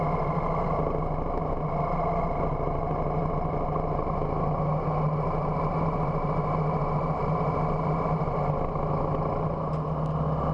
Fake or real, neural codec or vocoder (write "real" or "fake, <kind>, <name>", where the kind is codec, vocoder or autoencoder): real